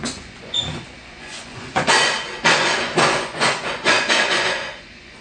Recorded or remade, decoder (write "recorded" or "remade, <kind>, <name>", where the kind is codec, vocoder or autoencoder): remade, vocoder, Vocos